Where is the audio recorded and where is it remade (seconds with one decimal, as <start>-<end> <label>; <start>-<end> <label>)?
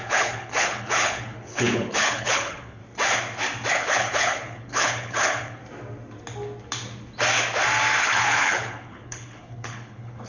0.0-2.8 remade; 2.8-3.7 recorded; 3.7-5.6 remade; 5.6-8.0 recorded; 8.0-10.3 remade